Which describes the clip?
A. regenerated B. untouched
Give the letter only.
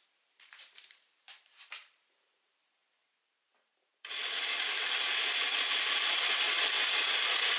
A